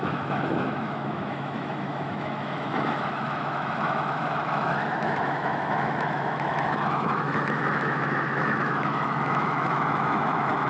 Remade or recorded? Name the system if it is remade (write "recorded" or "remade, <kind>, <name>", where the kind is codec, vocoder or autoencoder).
remade, autoencoder, DAC-VAE